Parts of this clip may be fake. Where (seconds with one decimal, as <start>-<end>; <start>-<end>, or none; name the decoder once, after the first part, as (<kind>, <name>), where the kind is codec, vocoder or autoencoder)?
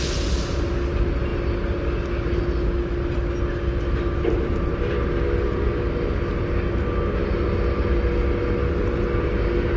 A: none